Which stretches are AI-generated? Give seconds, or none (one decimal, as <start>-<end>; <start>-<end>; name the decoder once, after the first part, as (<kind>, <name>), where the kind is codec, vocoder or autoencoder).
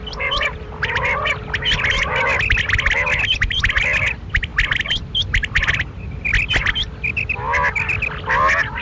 none